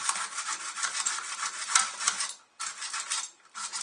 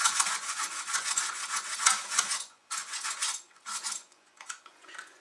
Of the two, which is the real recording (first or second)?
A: first